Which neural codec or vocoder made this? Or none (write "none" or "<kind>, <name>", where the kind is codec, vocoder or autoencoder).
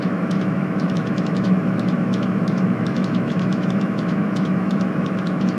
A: autoencoder, DAC-VAE